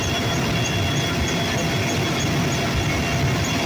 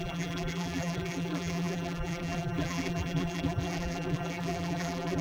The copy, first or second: second